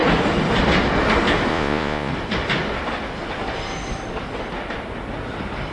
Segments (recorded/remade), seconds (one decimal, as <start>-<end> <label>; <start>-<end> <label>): 0.0-1.5 recorded; 1.5-2.1 remade; 2.1-5.7 recorded